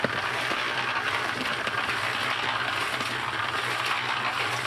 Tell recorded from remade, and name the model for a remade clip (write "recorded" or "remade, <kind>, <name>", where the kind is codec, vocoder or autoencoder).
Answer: recorded